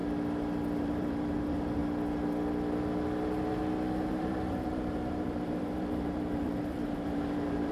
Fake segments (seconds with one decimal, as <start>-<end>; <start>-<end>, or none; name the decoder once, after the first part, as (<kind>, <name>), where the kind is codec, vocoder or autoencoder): 0.8-1.8 (vocoder, BigVGAN v2); 4.1-7.7